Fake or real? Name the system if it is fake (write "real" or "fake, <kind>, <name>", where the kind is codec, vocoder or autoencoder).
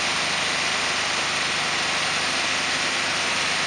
real